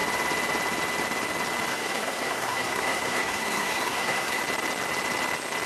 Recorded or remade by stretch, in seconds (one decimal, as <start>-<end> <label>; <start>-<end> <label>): 0.0-1.7 recorded; 1.7-4.4 remade; 4.4-5.7 recorded